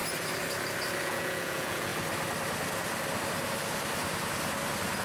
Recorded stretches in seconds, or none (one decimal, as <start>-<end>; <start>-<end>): 0.0-1.0; 1.9-5.0